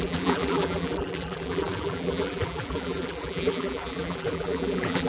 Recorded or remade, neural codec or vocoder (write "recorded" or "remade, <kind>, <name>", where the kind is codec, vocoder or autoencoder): remade, vocoder, BigVGAN v2